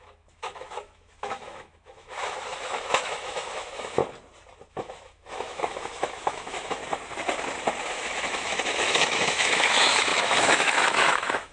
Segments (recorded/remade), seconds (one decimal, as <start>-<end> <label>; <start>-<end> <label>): 0.0-4.0 remade; 4.0-4.7 recorded; 4.7-6.8 remade; 6.8-7.8 recorded; 7.8-11.5 remade